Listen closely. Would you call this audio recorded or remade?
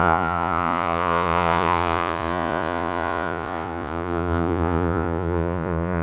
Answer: remade